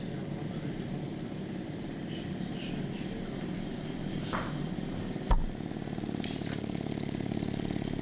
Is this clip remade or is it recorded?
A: recorded